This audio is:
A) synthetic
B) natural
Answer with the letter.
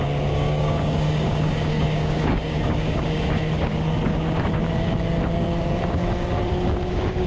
A